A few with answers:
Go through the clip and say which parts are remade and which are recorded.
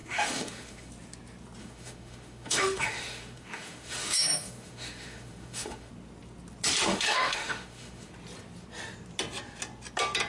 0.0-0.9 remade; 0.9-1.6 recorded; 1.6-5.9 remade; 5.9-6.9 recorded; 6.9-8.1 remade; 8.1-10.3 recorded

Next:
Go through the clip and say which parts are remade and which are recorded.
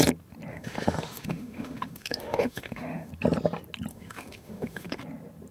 0.0-0.5 recorded; 0.5-3.1 remade; 3.1-3.9 recorded; 3.9-5.0 remade; 5.0-5.5 recorded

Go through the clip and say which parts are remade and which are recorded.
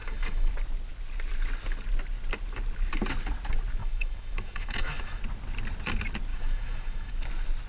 0.0-0.5 remade; 0.5-3.8 recorded; 3.8-5.2 remade; 5.2-6.3 recorded; 6.3-7.1 remade; 7.1-7.7 recorded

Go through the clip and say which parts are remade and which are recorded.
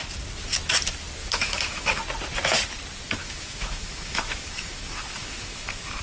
0.0-1.2 recorded; 1.2-2.0 remade; 2.0-3.2 recorded; 3.2-6.0 remade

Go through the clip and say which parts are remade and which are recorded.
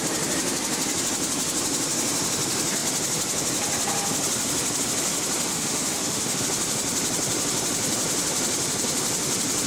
0.0-5.5 recorded; 5.5-6.4 remade; 6.4-9.7 recorded